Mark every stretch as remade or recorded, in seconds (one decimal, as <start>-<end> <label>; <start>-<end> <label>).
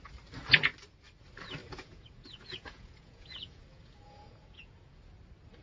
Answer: 0.0-1.6 recorded; 1.6-5.0 remade; 5.0-5.6 recorded